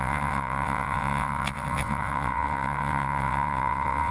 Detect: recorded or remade remade